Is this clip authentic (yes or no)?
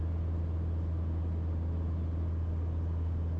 yes